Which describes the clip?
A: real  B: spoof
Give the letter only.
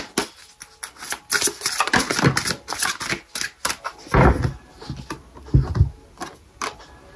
A